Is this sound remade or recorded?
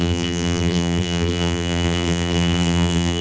remade